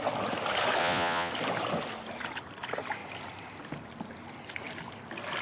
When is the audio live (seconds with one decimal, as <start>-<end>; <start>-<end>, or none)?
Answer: 0.0-0.8; 1.3-5.4